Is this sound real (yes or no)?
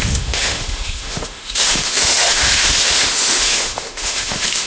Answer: no